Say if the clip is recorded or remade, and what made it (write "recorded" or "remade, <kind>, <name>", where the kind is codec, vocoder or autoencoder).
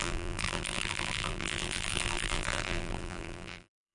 remade, vocoder, BigVGAN v2